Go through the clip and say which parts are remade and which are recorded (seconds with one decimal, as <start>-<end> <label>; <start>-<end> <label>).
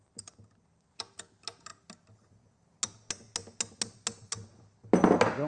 0.0-5.5 recorded